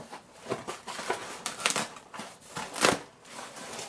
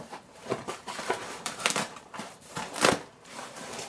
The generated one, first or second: second